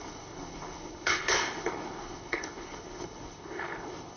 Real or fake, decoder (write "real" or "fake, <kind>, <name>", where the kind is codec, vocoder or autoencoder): fake, codec, HILCodec